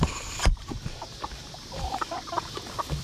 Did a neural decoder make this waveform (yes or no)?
yes